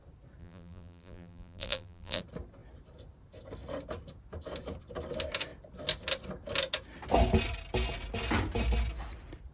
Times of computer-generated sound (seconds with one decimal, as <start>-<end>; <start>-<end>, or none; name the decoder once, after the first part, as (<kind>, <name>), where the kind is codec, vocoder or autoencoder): 0.4-2.2 (vocoder, BigVGAN v2)